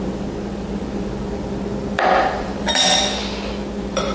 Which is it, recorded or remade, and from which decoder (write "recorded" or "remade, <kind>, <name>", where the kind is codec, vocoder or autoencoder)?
recorded